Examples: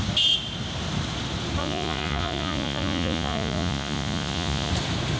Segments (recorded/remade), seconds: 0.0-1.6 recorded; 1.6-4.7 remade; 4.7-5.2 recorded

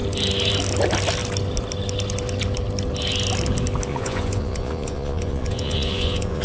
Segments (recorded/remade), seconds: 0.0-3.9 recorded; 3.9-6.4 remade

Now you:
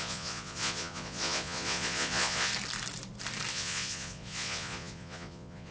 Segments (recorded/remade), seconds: 0.0-2.5 remade; 2.5-3.5 recorded; 3.5-5.7 remade